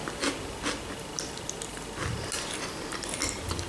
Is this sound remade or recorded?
recorded